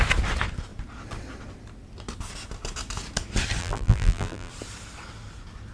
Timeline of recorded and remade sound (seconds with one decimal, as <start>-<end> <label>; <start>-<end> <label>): 0.0-3.6 recorded; 3.6-4.5 remade; 4.5-5.7 recorded